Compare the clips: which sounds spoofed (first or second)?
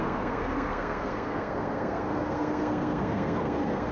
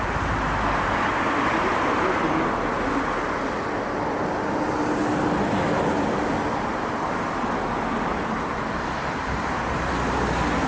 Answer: first